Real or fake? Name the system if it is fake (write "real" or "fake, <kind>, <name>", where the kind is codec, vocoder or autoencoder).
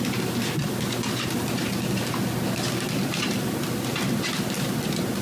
real